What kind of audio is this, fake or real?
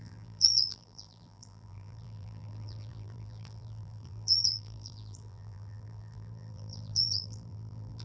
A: fake